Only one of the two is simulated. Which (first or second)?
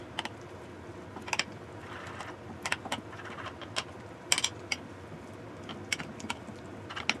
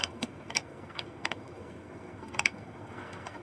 second